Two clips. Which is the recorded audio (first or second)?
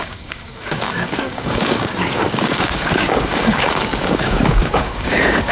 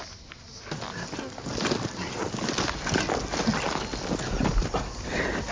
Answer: second